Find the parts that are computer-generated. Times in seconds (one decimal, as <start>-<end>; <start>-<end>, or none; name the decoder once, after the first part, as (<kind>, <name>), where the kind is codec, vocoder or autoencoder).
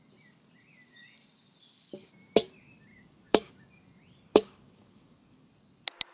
2.9-3.5 (codec, DAC); 4.3-5.5